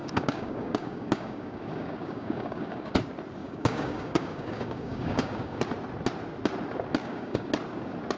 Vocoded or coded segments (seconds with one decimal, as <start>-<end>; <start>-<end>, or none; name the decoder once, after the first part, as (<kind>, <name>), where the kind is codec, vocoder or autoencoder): 0.0-2.9 (codec, DAC); 3.4-5.6; 7.0-7.5

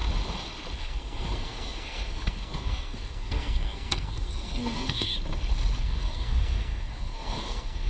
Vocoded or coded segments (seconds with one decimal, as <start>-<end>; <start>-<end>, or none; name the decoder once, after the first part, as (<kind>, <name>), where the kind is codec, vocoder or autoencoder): 0.8-5.1 (codec, SNAC); 5.8-7.9

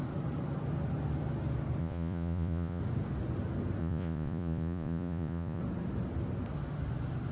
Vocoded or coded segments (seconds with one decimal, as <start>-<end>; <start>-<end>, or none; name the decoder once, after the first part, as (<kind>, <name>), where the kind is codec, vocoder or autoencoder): 1.8-2.8 (vocoder, Vocos); 3.8-5.6

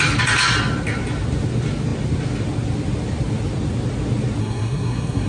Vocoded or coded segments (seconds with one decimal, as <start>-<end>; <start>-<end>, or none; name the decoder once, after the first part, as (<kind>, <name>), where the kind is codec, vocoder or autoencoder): 4.4-5.3 (codec, SNAC)

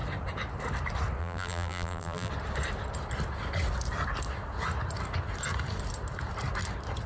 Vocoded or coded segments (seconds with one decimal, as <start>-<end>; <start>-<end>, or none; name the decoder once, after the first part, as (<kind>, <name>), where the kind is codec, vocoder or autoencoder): 1.2-2.3 (vocoder, BigVGAN v2)

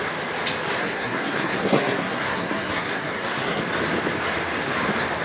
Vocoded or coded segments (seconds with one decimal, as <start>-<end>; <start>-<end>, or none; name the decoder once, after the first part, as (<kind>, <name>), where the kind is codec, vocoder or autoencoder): 0.8-3.6 (codec, SNAC)